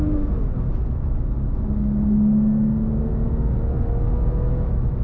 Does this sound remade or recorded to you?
recorded